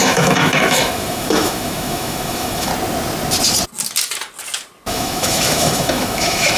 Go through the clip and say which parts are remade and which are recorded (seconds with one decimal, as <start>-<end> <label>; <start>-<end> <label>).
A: 0.0-2.7 remade; 2.7-4.9 recorded; 4.9-6.6 remade